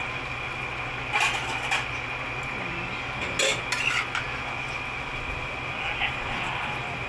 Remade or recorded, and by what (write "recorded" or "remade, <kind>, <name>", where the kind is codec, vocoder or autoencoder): recorded